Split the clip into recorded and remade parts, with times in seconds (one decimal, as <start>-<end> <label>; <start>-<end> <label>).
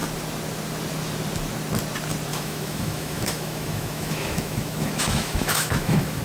0.0-2.3 recorded; 2.3-6.2 remade